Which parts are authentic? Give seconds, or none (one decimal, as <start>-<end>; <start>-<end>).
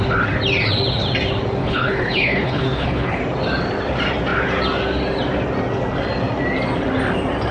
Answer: 0.0-1.6; 3.2-7.5